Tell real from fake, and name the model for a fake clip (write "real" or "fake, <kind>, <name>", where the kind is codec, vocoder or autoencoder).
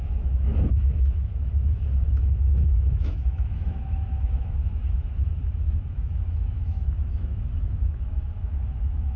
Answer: fake, autoencoder, DAC-VAE